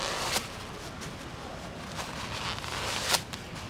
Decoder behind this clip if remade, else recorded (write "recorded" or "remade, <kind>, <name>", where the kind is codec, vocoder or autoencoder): recorded